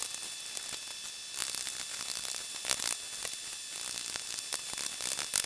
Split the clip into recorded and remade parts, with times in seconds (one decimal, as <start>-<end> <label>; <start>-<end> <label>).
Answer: 0.0-5.5 recorded